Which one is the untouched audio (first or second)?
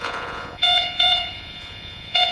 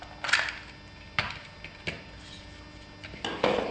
second